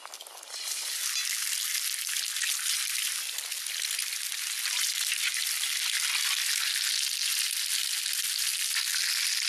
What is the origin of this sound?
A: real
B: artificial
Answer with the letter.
A